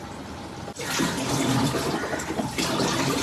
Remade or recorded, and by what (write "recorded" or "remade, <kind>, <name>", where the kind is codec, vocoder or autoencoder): remade, vocoder, BigVGAN v2